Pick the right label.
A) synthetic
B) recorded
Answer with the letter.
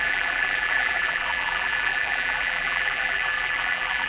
A